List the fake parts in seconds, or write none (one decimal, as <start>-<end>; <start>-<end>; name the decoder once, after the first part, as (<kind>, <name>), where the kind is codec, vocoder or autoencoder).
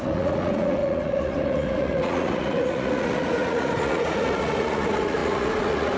0.0-6.0 (vocoder, Vocos)